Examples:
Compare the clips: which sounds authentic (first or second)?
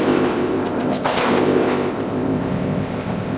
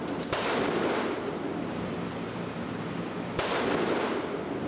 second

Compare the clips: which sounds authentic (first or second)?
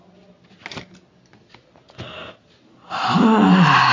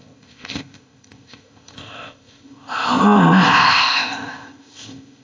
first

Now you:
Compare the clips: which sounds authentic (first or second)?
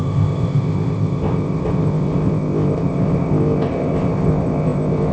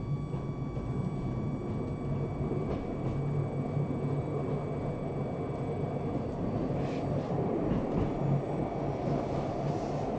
second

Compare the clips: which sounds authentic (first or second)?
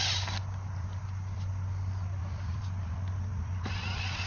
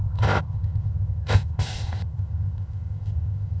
first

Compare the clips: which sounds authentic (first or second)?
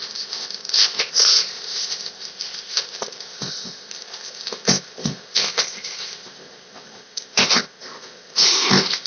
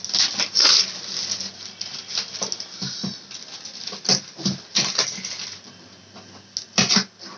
second